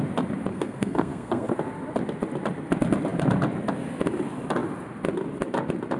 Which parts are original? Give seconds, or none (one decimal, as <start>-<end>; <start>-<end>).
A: 0.0-0.5; 1.5-6.0